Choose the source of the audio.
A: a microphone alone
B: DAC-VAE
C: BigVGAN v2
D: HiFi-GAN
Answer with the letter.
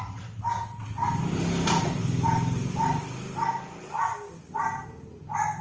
A